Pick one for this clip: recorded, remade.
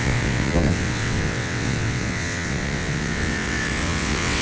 remade